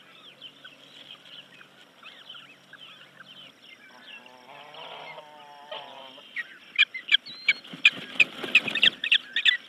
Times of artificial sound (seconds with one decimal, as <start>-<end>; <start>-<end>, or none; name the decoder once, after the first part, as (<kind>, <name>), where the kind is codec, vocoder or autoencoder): none